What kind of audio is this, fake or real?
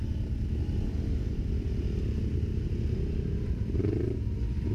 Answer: real